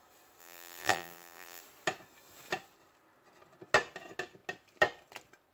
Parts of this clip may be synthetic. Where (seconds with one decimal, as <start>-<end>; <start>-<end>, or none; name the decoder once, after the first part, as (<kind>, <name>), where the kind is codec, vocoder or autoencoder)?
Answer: 0.4-1.6 (vocoder, BigVGAN v2)

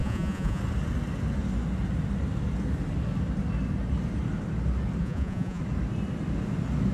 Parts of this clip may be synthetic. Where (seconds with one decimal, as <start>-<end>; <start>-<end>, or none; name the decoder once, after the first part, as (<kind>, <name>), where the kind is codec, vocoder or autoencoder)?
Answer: 0.0-0.6 (vocoder, Vocos); 5.0-5.6

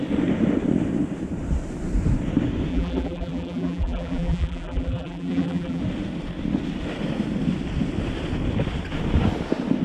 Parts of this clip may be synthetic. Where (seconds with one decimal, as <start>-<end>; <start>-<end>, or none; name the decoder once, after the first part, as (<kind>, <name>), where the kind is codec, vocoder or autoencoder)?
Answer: 2.7-5.8 (vocoder, BigVGAN v2)